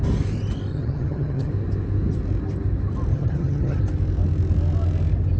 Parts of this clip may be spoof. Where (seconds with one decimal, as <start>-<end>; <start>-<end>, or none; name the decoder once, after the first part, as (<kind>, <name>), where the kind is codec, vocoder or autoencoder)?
0.7-1.5 (vocoder, HiFi-GAN); 3.1-3.8